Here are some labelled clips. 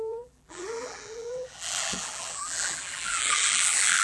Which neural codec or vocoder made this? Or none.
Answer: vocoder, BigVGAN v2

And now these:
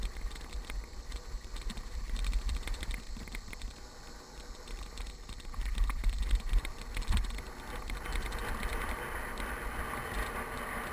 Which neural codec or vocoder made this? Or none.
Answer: none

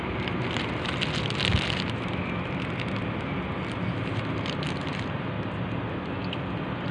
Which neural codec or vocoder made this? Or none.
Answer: none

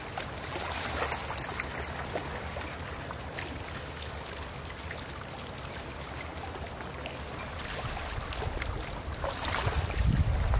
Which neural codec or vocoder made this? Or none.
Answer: none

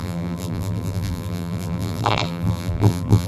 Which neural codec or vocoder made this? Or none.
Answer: vocoder, BigVGAN v2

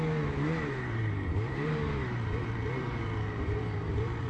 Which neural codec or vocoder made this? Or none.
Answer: vocoder, BigVGAN v2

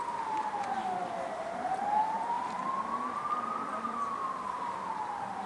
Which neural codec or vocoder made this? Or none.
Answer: vocoder, BigVGAN v2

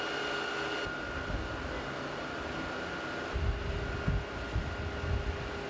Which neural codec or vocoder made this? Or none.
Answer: none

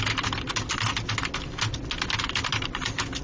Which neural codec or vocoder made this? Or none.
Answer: none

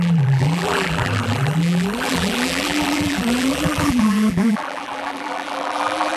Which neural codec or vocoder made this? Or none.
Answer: vocoder, BigVGAN v2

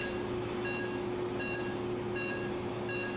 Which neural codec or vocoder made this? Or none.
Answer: none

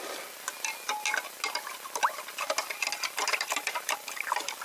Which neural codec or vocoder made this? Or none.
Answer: none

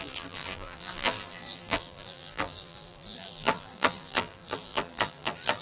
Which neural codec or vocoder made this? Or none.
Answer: vocoder, BigVGAN v2